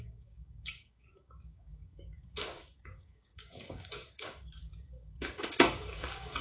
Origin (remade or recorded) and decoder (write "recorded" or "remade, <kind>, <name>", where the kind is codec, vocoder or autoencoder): remade, codec, DAC